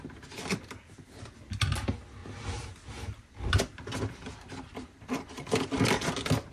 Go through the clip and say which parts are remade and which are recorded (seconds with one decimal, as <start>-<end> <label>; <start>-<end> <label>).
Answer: 0.0-2.2 recorded; 2.2-6.1 remade; 6.1-6.5 recorded